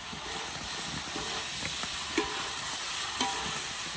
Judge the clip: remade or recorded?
recorded